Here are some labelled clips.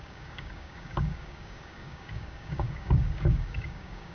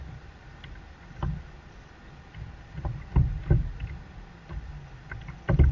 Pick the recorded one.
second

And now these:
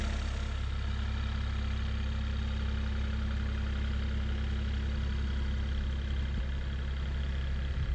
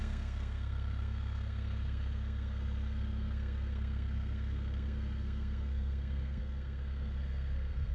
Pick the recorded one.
first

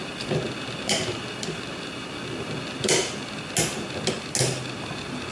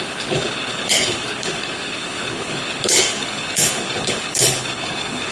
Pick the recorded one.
first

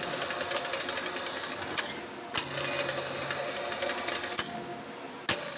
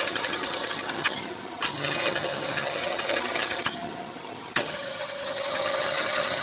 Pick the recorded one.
first